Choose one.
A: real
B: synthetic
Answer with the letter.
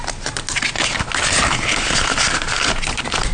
A